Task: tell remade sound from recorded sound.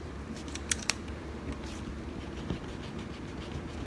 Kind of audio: remade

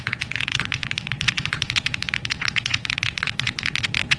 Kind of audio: remade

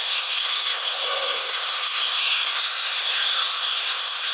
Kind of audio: remade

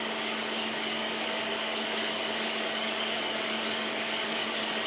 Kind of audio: remade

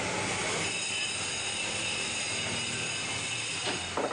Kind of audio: recorded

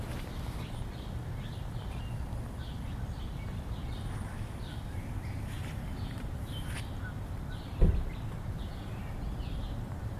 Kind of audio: remade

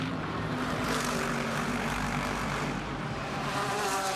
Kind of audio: remade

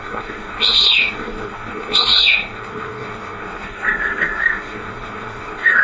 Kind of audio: remade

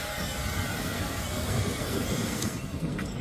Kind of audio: remade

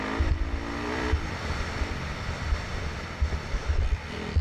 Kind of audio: recorded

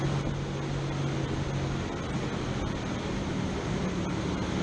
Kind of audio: recorded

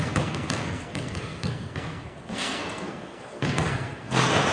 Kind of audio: remade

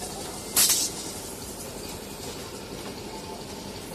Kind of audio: recorded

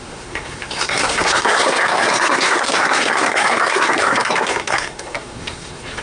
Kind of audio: remade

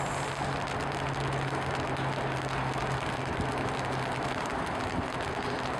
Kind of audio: recorded